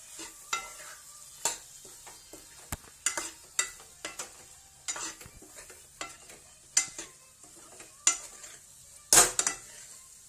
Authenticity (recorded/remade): recorded